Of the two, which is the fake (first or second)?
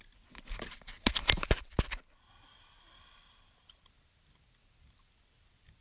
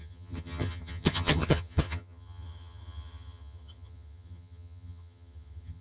second